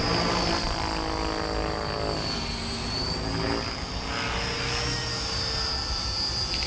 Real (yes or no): yes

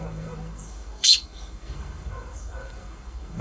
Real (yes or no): no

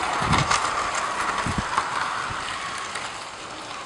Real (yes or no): yes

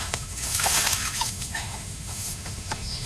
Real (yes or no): no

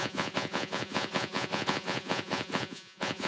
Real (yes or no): no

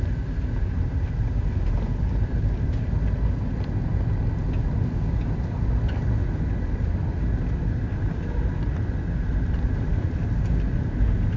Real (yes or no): yes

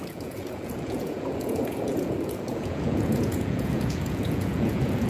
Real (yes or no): no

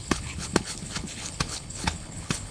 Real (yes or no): no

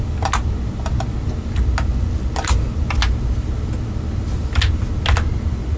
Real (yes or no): yes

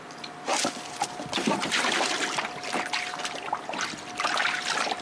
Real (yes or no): yes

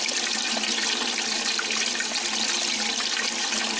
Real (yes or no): yes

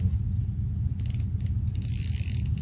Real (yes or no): yes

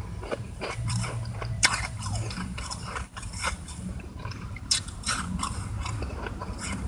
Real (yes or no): no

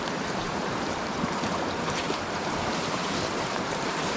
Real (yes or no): no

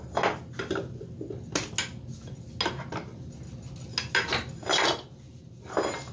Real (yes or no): yes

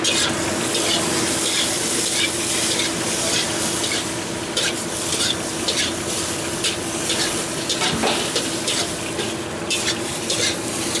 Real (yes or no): yes